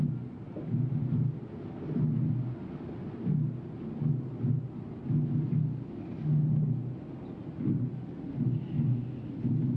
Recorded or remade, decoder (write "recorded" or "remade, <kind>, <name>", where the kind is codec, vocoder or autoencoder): recorded